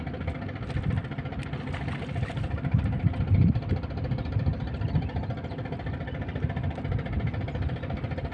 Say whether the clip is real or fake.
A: real